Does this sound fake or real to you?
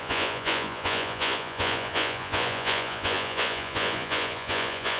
fake